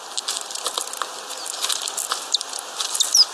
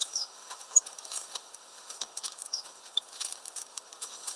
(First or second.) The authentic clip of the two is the first